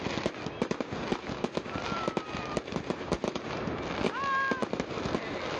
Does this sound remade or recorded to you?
recorded